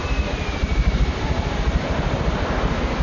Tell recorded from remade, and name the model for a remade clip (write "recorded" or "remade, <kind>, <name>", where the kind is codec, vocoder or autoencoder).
remade, vocoder, BigVGAN v2